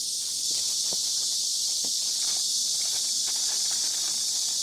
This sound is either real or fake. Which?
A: real